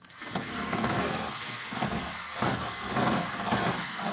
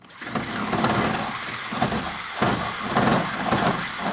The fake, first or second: first